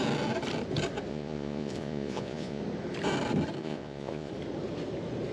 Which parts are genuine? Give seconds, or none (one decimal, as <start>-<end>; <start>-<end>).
0.0-1.1; 2.6-3.6; 4.3-5.3